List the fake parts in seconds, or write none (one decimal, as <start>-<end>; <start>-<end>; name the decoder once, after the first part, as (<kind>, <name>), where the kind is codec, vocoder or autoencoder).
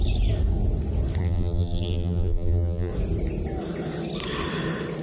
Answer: 1.2-2.9 (vocoder, BigVGAN v2)